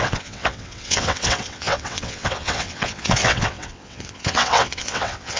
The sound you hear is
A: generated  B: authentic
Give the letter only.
A